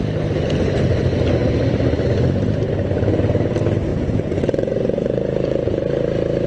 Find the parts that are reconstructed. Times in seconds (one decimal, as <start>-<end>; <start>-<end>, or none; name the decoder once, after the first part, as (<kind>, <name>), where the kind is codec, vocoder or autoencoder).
3.9-5.8 (vocoder, Vocos)